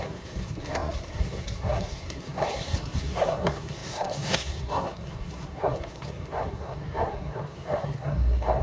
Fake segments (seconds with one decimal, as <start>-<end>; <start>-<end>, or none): 0.0-8.6